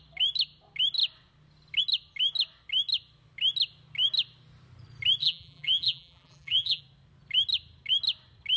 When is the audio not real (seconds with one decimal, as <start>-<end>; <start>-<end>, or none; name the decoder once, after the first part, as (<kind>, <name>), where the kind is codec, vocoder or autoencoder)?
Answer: 5.2-6.8 (vocoder, BigVGAN v2)